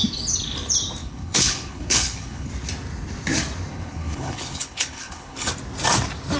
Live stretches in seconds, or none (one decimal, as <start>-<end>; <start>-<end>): 0.0-1.0; 2.5-3.7; 5.5-6.4